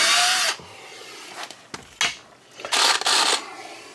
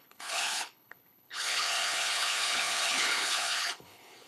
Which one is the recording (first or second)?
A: first